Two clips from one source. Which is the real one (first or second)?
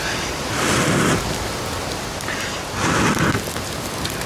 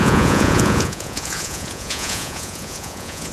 first